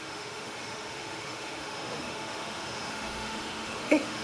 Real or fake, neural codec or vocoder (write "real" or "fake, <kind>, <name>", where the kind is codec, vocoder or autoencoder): fake, autoencoder, DAC-VAE